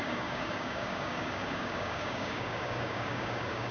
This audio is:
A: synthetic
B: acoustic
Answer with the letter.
A